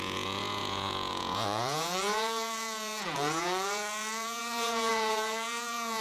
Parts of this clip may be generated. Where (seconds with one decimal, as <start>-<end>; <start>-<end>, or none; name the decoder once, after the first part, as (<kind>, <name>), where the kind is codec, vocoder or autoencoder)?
0.0-6.0 (vocoder, Vocos)